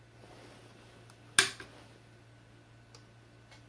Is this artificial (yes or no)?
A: no